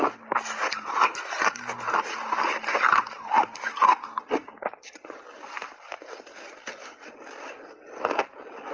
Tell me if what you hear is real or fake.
real